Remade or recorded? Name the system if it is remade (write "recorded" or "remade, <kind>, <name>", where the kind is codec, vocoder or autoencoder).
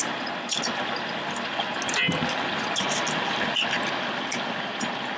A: recorded